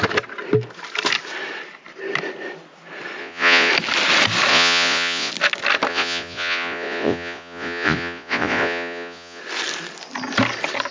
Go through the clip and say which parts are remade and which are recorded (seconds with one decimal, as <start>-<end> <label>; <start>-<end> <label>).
0.0-3.2 recorded; 3.2-3.7 remade; 3.7-4.5 recorded; 4.5-5.3 remade; 5.3-5.9 recorded; 5.9-9.4 remade; 9.4-10.9 recorded